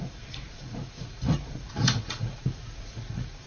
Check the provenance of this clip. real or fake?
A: fake